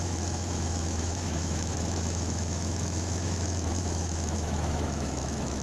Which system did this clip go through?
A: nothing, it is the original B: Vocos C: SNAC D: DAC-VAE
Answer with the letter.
D